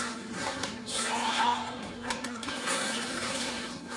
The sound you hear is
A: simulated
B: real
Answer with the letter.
A